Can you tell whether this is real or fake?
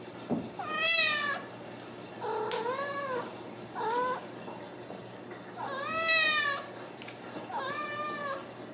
real